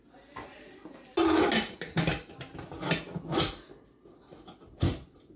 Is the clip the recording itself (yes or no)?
yes